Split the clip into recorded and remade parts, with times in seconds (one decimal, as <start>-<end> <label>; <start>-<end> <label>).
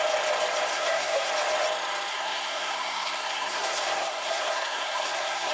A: 0.0-0.7 recorded; 0.7-1.3 remade; 1.3-2.1 recorded; 2.1-5.5 remade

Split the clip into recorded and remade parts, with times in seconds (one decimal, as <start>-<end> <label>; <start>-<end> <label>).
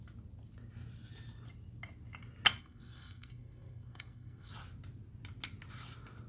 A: 0.0-2.6 recorded; 2.6-4.5 remade; 4.5-6.3 recorded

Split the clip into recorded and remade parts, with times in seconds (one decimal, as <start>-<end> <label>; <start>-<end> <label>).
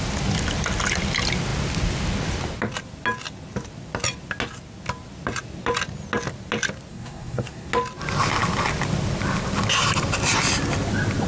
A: 0.0-6.9 recorded; 6.9-7.7 remade; 7.7-11.3 recorded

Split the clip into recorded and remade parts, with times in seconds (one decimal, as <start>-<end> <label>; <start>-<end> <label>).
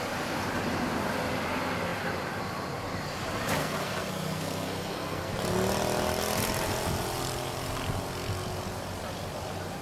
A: 0.0-3.6 recorded; 3.6-5.3 remade; 5.3-9.8 recorded